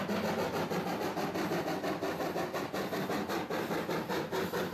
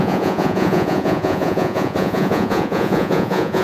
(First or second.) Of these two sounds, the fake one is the second